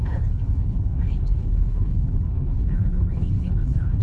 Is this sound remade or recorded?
remade